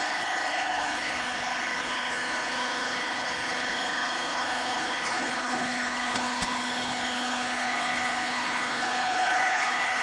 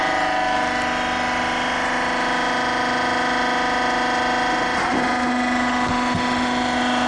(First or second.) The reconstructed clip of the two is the first